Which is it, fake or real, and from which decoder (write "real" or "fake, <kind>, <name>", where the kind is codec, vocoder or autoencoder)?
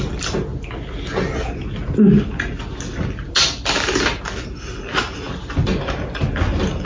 real